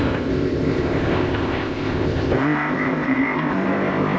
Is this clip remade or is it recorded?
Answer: remade